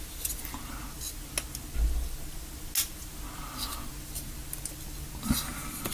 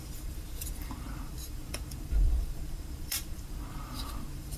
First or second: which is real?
first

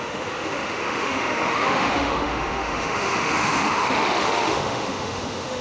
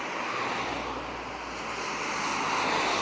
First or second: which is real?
second